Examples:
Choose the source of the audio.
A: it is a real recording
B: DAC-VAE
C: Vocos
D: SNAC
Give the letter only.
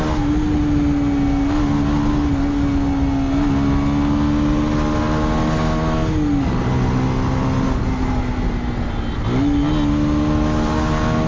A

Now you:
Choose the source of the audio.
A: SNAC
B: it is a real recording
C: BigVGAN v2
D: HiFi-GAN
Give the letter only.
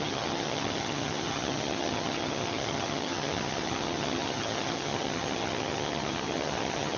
D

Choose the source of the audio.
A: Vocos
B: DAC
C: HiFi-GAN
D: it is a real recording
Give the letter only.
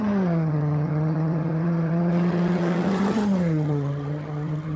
C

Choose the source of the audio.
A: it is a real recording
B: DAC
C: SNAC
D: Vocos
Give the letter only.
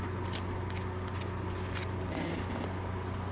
A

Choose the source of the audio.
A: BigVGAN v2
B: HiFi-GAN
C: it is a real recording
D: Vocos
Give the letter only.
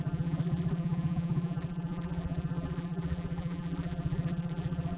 A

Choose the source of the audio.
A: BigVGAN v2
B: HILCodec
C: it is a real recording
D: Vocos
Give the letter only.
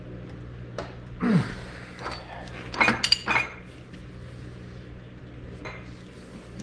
C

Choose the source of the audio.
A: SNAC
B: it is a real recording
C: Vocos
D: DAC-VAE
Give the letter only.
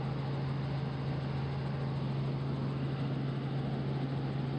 B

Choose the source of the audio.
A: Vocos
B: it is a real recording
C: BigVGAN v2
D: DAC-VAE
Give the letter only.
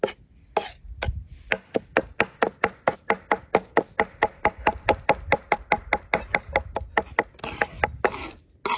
B